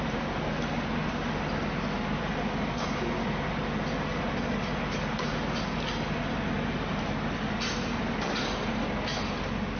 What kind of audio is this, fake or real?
real